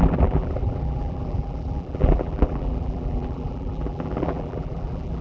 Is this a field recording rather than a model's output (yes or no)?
no